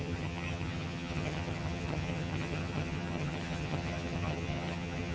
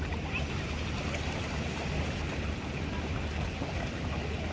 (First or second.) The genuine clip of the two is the second